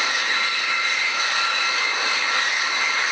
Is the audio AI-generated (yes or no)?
yes